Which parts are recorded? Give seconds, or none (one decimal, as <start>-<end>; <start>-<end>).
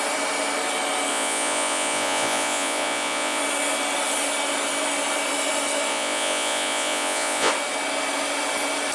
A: 0.0-1.1; 3.4-5.9; 7.5-8.9